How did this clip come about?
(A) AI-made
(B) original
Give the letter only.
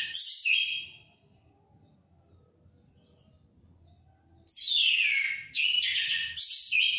B